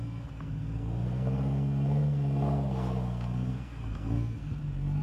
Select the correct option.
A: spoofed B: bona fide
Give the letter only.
A